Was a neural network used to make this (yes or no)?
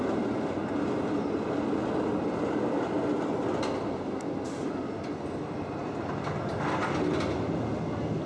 no